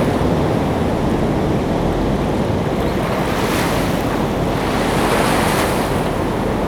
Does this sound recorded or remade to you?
recorded